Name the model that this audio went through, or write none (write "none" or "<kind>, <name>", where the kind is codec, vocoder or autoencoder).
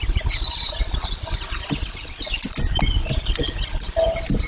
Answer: vocoder, BigVGAN v2